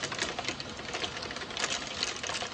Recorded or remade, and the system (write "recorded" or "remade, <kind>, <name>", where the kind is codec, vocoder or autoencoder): recorded